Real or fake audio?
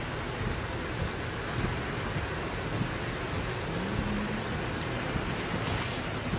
real